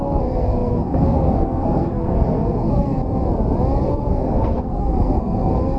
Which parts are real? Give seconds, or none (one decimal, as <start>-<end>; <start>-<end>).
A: 3.0-3.8